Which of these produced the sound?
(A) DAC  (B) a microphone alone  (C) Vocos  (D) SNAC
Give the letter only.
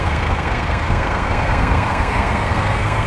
D